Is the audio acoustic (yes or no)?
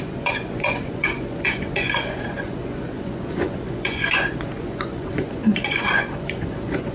no